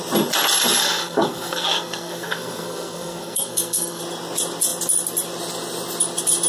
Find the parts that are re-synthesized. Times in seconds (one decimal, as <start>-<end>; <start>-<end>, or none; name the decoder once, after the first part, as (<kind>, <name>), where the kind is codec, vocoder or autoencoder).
0.8-4.0 (codec, SNAC)